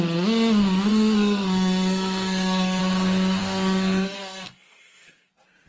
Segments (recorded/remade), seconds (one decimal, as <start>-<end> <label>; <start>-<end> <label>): 0.0-0.9 recorded; 0.9-2.8 remade; 2.8-3.4 recorded; 3.4-5.3 remade; 5.3-5.7 recorded